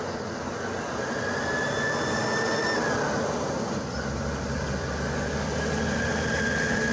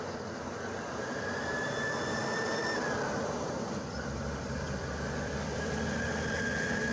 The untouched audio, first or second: first